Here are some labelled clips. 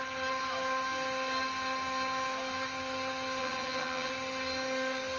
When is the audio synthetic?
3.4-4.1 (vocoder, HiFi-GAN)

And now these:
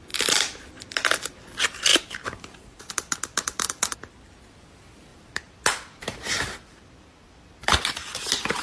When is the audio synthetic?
1.9-2.9 (vocoder, BigVGAN v2); 5.1-7.8

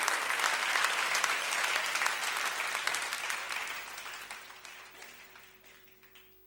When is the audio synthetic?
2.2-6.1 (vocoder, BigVGAN v2)